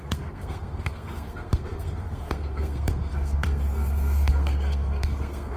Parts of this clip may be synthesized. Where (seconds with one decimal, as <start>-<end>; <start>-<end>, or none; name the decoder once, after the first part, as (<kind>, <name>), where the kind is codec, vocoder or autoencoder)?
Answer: 0.0-5.6 (codec, SNAC)